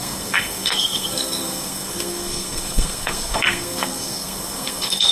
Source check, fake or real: fake